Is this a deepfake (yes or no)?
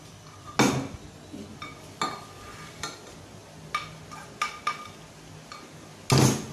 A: no